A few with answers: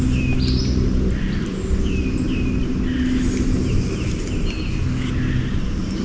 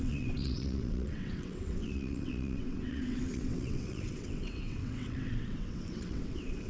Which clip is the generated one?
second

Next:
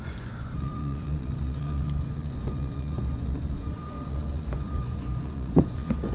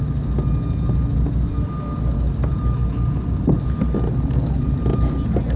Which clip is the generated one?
first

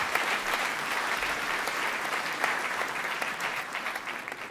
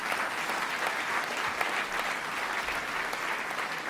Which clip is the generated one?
first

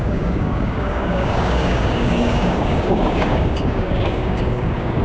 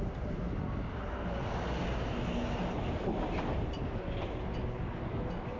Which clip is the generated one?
first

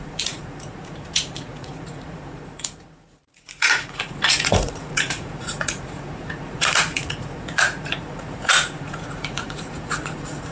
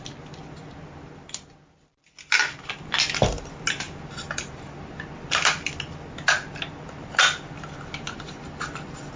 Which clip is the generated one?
first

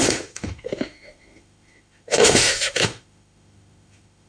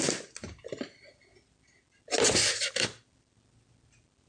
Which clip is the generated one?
first